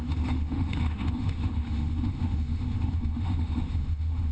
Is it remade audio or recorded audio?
remade